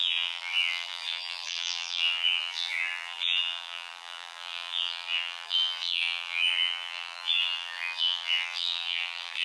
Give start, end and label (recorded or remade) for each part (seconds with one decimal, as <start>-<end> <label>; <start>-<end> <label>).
0.0-9.4 remade

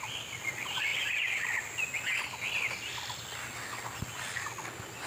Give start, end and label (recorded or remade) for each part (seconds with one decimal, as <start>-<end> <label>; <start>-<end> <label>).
0.0-5.1 recorded

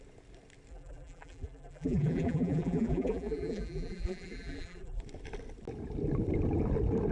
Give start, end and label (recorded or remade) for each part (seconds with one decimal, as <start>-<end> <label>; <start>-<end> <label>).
0.0-0.7 recorded; 0.7-5.0 remade; 5.0-7.1 recorded

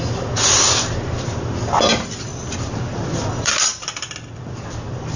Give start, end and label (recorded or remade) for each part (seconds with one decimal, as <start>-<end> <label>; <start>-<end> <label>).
0.0-2.3 recorded; 2.3-4.4 remade; 4.4-5.2 recorded